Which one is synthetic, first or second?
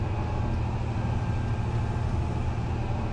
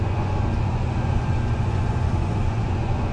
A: second